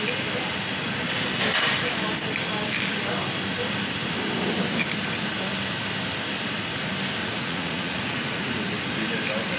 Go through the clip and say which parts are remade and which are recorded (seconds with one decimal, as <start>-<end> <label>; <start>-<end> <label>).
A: 0.0-7.2 recorded; 7.2-8.5 remade; 8.5-9.6 recorded